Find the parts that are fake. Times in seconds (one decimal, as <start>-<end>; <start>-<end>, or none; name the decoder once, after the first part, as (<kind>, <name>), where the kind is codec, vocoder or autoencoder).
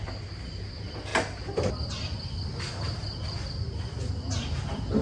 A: none